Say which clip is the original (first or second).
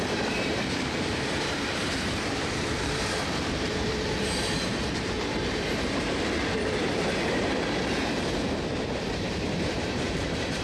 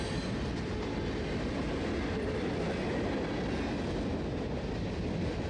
second